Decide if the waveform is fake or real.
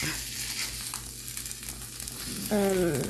real